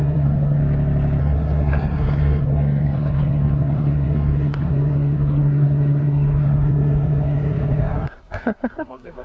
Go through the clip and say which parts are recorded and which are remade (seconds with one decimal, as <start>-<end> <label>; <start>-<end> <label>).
0.0-0.6 remade; 0.6-1.2 recorded; 1.2-9.2 remade